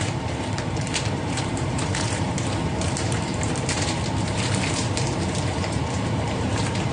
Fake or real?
fake